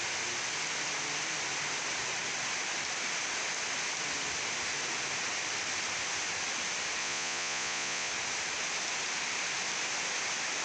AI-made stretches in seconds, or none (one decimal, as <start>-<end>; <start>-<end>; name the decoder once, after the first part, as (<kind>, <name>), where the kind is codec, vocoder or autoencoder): 7.0-8.1 (vocoder, Vocos)